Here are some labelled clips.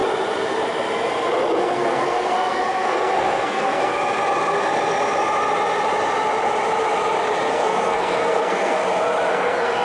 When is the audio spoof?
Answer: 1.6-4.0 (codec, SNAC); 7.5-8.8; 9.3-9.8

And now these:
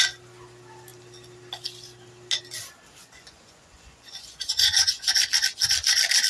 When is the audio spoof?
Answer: 3.0-5.1 (vocoder, Vocos)

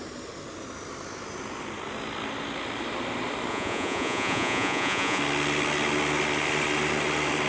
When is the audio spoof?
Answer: 3.5-5.2 (vocoder, Vocos)